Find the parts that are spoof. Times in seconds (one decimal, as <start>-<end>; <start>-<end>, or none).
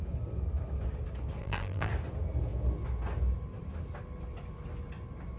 1.4-1.9